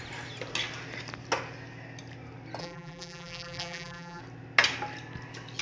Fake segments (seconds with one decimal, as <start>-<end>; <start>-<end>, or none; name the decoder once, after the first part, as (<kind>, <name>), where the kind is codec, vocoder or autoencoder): 2.6-4.2 (vocoder, BigVGAN v2)